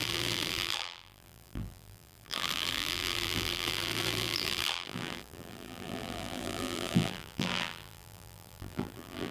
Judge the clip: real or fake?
fake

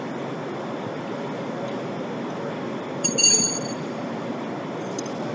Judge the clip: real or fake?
fake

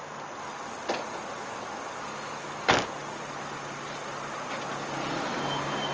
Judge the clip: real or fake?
real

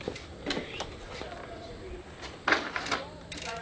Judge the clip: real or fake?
real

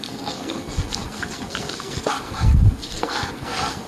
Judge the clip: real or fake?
fake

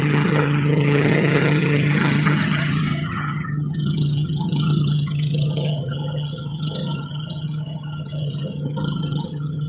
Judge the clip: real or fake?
fake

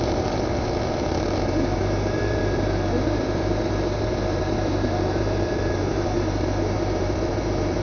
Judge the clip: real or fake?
fake